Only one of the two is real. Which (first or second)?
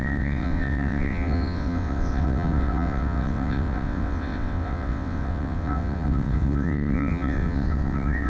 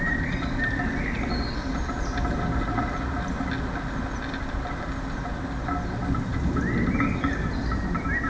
second